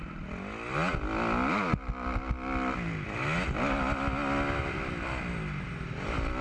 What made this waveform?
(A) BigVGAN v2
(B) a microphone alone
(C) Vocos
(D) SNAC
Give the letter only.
B